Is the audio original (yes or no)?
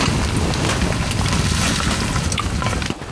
yes